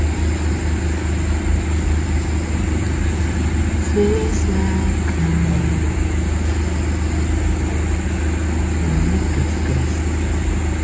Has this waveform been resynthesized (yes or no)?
no